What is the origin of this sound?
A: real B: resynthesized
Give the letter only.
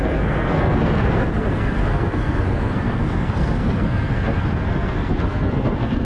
B